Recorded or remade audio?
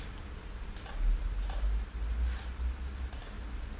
recorded